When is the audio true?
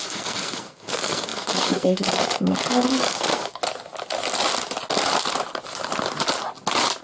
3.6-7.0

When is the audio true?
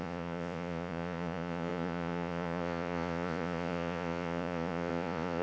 none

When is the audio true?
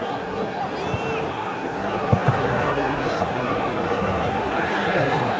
0.6-1.3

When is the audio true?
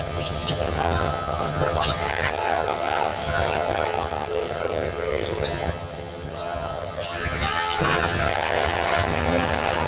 none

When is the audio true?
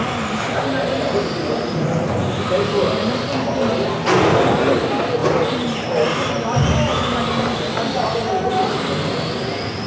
0.0-9.9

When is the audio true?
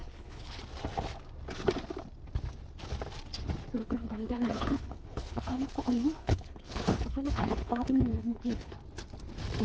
0.6-3.8; 8.7-9.6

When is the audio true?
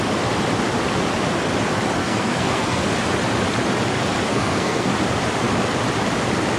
0.0-2.0; 2.8-4.3; 4.9-6.6